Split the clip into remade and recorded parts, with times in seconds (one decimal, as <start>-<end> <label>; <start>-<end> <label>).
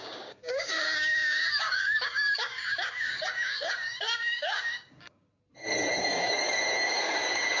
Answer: 0.0-5.3 remade; 5.3-6.0 recorded; 6.0-7.6 remade